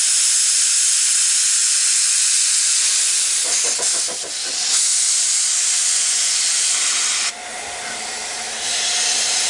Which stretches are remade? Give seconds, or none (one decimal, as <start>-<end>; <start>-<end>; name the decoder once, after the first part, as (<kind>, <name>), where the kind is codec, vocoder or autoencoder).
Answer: 1.6-3.1 (vocoder, Vocos); 5.8-6.4